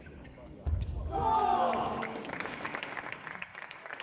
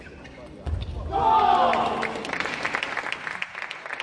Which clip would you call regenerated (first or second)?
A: first